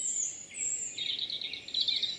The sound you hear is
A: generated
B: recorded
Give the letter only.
B